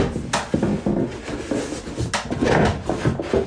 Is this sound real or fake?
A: real